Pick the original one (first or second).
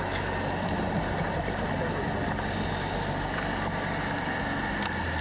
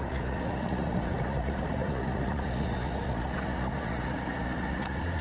first